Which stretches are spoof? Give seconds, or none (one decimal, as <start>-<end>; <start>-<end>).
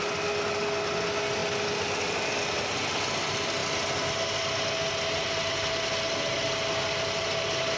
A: none